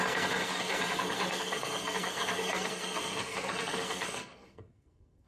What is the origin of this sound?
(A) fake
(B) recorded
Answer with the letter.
A